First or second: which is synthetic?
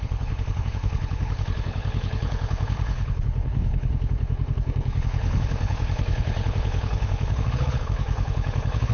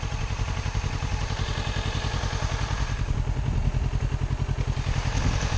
first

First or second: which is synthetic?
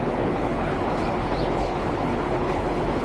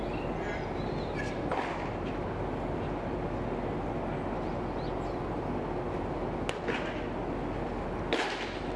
first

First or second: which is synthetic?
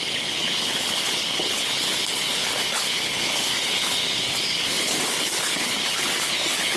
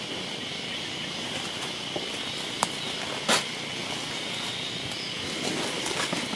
first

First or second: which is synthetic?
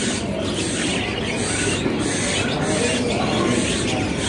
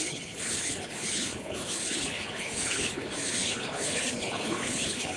second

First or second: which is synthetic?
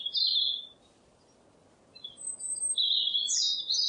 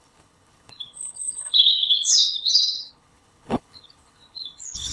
second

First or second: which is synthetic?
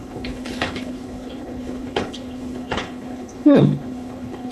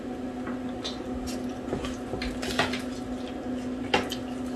first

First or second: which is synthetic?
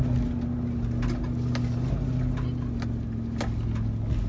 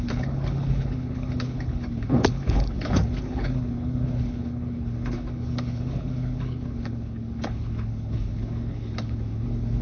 second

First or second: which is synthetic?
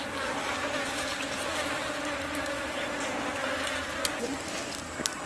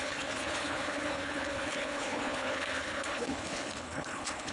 second